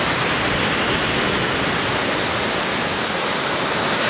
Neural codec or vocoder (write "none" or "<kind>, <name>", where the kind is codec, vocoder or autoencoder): none